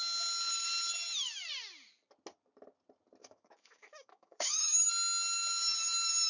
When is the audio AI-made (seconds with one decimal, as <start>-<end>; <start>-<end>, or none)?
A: 3.2-4.9